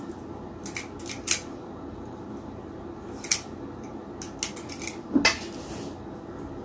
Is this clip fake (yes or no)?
no